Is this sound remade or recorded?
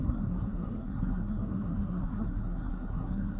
remade